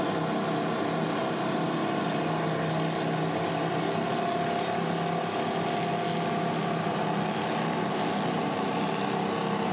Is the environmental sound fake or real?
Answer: real